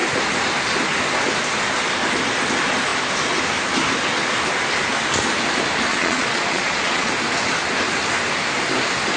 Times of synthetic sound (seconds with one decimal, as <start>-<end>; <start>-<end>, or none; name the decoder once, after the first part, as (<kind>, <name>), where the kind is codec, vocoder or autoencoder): 5.9-7.1 (vocoder, Vocos)